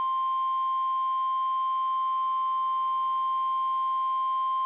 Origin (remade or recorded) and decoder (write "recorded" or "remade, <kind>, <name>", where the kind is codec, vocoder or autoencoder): recorded